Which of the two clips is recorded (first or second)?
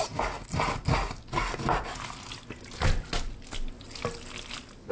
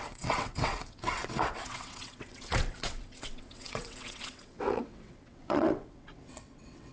first